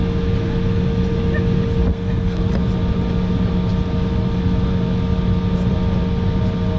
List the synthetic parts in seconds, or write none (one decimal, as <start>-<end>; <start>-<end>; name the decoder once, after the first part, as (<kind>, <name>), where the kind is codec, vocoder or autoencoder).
1.9-2.5 (codec, SNAC)